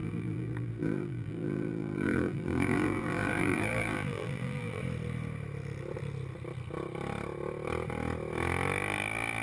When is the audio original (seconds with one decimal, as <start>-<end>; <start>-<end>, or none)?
4.8-9.4